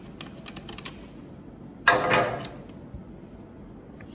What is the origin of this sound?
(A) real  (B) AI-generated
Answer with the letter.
A